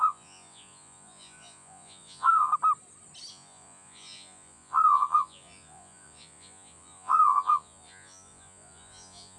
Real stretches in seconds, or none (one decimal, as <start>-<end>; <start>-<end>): 2.5-3.3